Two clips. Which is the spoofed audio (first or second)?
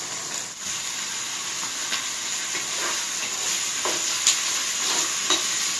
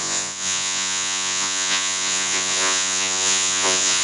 second